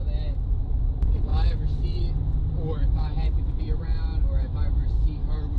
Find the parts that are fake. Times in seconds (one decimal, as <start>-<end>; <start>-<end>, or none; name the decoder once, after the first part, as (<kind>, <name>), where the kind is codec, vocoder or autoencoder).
0.6-1.3 (vocoder, BigVGAN v2); 2.4-4.1; 4.6-5.6